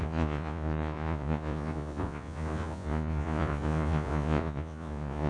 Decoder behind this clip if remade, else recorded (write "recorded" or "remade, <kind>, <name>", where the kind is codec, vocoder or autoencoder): remade, vocoder, Vocos